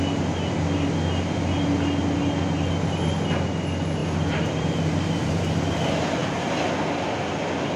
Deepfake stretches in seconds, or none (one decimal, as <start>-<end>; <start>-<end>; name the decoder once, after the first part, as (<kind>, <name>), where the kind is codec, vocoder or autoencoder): 4.0-5.4 (vocoder, BigVGAN v2); 6.2-6.7